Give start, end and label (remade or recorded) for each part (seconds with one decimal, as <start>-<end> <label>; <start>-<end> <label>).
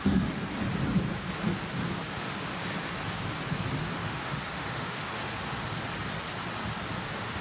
0.0-0.4 remade; 0.4-4.0 recorded; 4.0-5.3 remade; 5.3-7.0 recorded; 7.0-7.4 remade